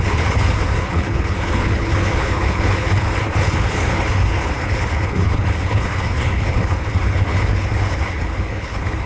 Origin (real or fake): fake